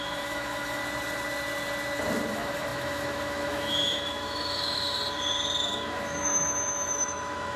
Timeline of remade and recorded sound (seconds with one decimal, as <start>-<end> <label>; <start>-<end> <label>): 0.0-0.8 remade; 0.8-2.3 recorded; 2.3-5.0 remade; 5.0-5.6 recorded; 5.6-7.6 remade